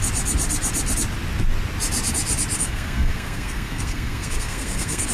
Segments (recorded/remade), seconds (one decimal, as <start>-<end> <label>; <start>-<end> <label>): 0.0-2.6 recorded; 2.6-5.1 remade